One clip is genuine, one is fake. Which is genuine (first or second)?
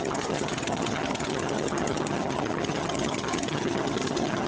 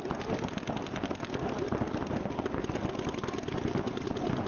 second